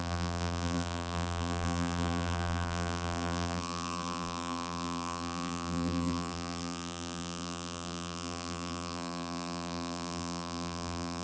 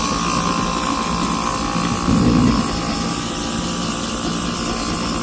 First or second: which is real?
second